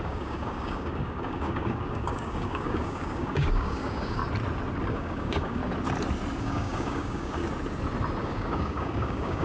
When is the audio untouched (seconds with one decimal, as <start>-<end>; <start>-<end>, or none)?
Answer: 4.2-4.9; 5.6-6.4; 7.4-8.2